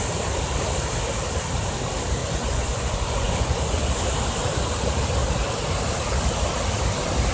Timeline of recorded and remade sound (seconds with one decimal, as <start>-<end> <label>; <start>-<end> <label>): 0.0-2.2 recorded; 2.2-4.0 remade; 4.0-7.3 recorded